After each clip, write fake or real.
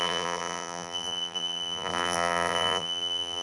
fake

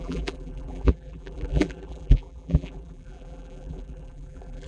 fake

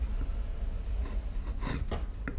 real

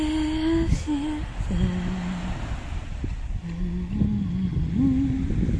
real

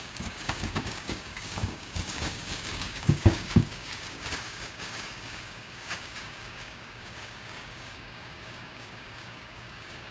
fake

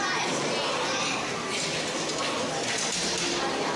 real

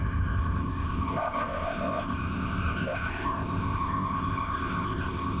fake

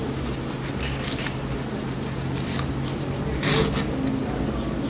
real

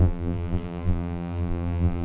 fake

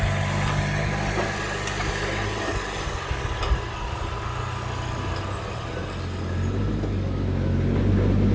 real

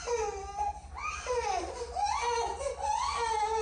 real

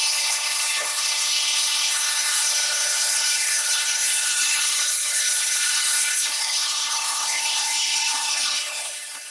fake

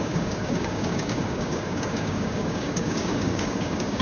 fake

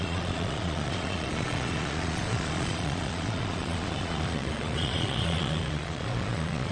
fake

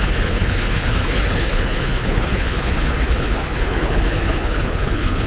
fake